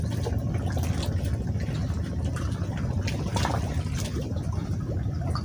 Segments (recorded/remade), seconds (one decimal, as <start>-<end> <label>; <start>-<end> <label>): 0.0-5.4 recorded